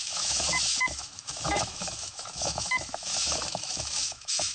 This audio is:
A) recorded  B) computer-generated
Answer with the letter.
B